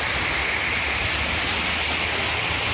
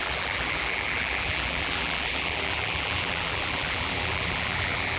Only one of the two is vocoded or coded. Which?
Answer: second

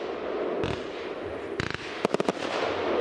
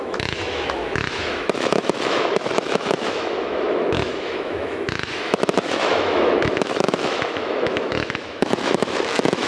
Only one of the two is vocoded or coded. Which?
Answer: second